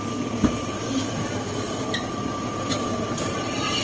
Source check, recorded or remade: remade